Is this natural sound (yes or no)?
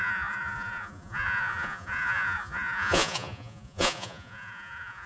no